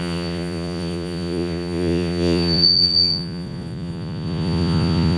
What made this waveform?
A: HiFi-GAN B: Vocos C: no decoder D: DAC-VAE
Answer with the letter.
B